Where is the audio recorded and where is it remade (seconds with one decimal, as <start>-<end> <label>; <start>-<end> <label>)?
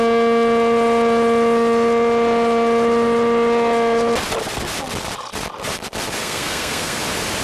0.0-6.2 recorded; 6.2-7.0 remade; 7.0-7.4 recorded